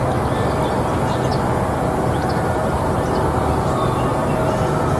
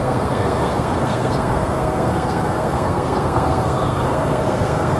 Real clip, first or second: first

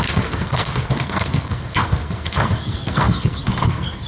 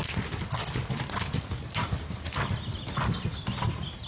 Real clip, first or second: second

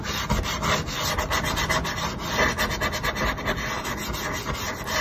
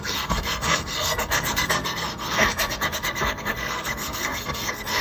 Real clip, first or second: first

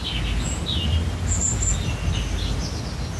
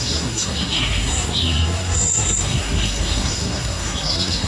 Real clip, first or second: first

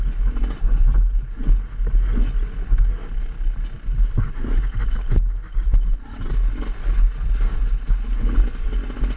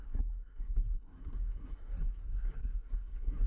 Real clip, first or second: first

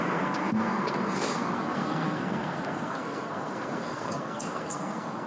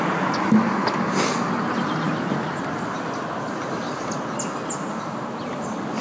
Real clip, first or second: second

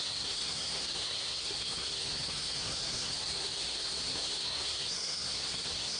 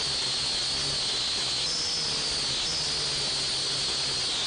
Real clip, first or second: second